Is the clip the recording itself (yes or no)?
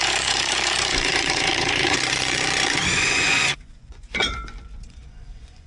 no